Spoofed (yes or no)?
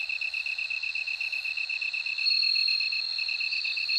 yes